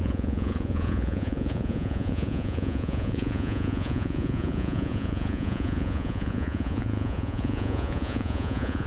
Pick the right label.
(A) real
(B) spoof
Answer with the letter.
B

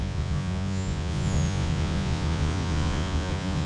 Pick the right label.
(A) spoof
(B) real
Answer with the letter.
A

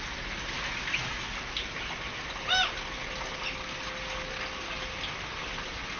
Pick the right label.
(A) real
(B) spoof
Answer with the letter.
A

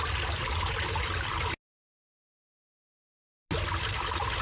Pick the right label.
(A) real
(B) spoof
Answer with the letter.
A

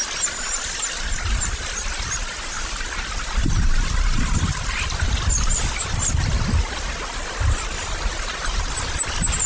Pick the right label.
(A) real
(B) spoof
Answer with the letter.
A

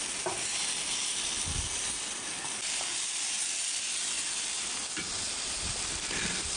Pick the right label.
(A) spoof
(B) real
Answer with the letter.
B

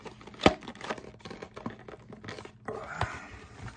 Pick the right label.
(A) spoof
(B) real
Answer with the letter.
B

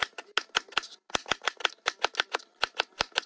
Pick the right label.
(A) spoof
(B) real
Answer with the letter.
B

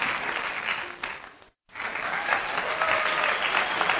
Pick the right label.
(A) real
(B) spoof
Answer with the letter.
A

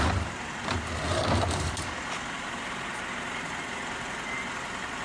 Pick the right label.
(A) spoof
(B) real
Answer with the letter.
B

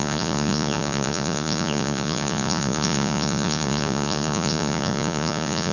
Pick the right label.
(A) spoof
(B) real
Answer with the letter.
A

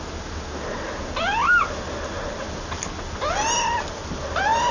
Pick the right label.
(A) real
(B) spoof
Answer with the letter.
A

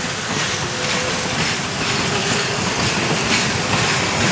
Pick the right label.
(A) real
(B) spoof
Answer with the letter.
A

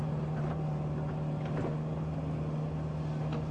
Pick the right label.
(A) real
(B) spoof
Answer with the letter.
A